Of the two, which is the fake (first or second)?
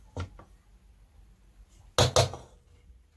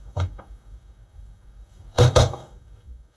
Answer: second